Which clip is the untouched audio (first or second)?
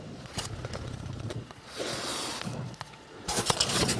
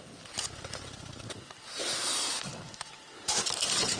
second